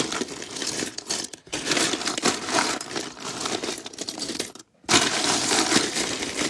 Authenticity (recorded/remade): remade